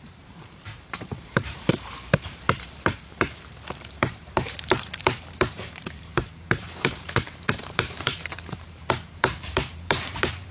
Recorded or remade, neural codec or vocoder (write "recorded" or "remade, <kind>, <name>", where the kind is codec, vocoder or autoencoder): remade, vocoder, BigVGAN v2